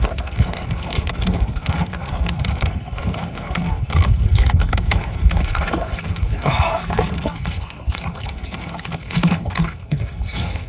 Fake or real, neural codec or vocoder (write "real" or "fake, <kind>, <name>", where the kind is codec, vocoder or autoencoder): fake, codec, SNAC